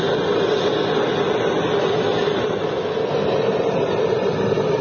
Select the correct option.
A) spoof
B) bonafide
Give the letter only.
B